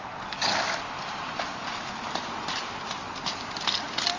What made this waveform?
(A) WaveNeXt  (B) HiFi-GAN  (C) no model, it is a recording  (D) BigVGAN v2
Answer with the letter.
C